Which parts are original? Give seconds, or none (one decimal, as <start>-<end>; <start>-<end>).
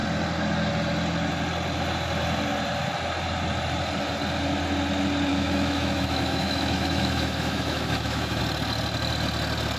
0.0-5.3; 8.4-9.8